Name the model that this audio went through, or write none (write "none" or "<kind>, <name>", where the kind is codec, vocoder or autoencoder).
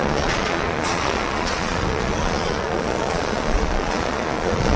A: vocoder, Vocos